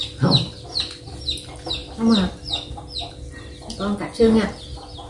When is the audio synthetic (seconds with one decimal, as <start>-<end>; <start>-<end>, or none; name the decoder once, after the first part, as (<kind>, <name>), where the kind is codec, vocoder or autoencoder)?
none